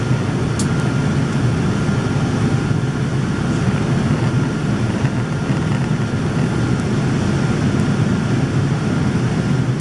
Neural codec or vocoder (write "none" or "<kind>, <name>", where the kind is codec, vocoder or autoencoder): none